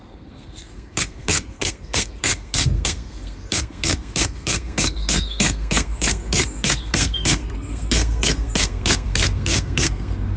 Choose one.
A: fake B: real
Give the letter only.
A